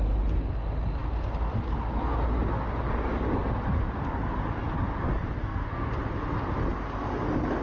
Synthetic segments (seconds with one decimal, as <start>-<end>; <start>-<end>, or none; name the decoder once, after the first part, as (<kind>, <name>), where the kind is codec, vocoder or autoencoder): 5.4-5.9 (codec, SNAC)